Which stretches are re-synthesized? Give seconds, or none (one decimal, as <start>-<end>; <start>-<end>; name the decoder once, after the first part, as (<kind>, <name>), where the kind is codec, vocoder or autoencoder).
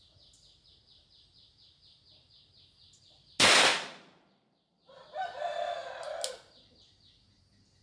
3.7-5.2 (vocoder, BigVGAN v2)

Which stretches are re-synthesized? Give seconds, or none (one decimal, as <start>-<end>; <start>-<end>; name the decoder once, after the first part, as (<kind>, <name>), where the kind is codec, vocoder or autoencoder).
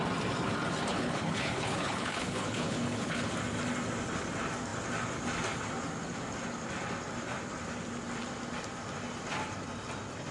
0.9-3.3 (codec, HILCodec)